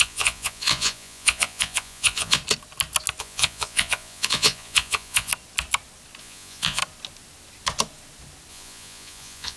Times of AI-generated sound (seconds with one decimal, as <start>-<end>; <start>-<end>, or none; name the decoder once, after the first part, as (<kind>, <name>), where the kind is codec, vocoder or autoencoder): 0.0-2.4 (vocoder, Vocos); 3.2-5.3; 6.2-6.8; 8.5-9.6